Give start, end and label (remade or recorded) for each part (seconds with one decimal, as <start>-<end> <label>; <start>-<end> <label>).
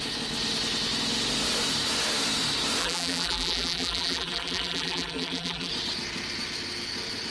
0.0-2.8 recorded; 2.8-5.7 remade; 5.7-7.3 recorded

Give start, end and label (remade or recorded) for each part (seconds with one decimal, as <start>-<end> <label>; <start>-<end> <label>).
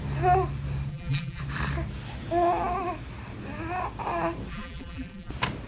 0.0-0.9 recorded; 0.9-1.4 remade; 1.4-4.5 recorded; 4.5-5.3 remade; 5.3-5.7 recorded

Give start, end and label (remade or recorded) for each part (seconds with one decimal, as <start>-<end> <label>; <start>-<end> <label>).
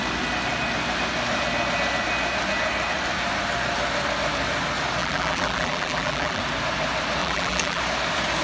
0.0-5.0 recorded; 5.0-6.4 remade; 6.4-7.2 recorded; 7.2-7.8 remade; 7.8-8.4 recorded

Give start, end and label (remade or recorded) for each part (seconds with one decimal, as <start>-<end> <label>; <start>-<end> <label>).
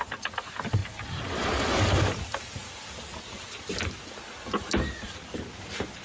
0.0-0.8 recorded; 0.8-2.1 remade; 2.1-6.0 recorded